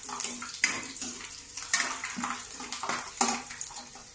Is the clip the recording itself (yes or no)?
no